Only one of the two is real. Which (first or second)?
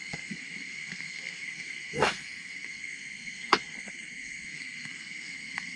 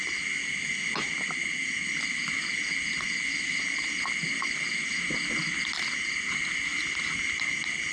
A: second